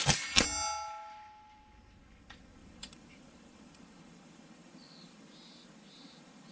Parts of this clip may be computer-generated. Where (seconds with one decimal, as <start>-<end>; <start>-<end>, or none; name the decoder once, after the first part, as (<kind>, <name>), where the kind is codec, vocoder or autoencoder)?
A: 2.6-5.2 (vocoder, BigVGAN v2)